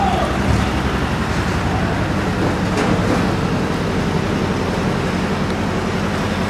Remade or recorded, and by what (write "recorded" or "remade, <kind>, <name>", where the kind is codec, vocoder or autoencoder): recorded